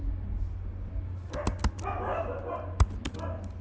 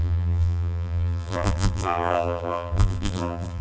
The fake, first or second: second